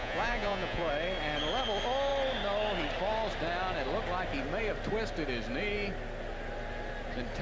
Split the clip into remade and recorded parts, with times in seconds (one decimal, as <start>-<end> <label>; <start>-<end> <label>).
0.0-0.9 remade; 0.9-7.4 recorded